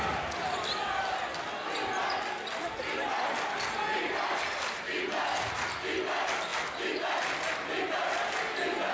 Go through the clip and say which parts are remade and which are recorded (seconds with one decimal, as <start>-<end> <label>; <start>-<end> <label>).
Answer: 0.0-8.9 recorded